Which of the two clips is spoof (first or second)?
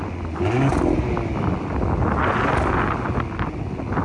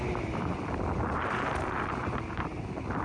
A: second